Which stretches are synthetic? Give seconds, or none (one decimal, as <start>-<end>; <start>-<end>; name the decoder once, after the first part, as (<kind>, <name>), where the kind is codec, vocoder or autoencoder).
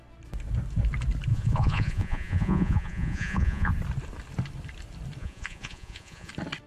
1.3-3.7 (vocoder, Vocos); 5.2-6.3